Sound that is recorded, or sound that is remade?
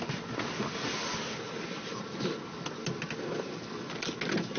recorded